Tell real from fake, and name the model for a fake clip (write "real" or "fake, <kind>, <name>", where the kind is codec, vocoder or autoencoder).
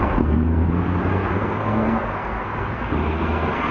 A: fake, codec, SNAC